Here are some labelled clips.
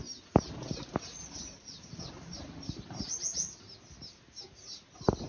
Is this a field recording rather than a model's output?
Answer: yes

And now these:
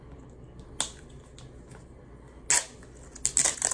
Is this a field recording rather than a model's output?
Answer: yes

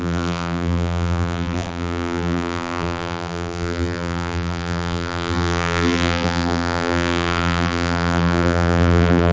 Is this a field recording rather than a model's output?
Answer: no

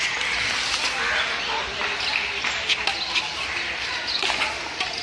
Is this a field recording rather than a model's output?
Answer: yes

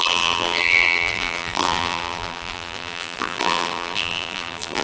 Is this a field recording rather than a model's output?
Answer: no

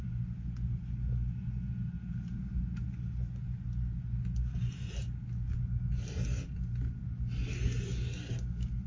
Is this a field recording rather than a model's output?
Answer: yes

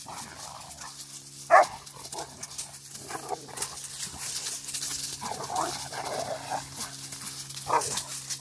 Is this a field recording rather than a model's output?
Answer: yes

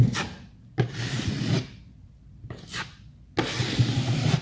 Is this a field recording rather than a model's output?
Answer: yes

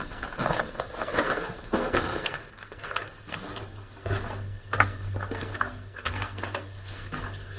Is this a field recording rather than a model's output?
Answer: no